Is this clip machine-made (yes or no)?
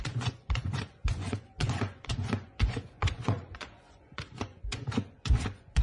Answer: yes